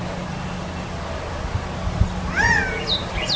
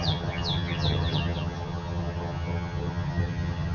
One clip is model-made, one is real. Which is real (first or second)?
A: first